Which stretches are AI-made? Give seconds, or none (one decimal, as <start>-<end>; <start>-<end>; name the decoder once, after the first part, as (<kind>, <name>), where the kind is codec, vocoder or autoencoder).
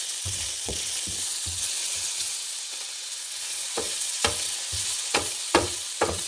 0.0-6.3 (vocoder, WaveNeXt)